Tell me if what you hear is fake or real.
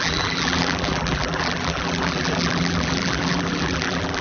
fake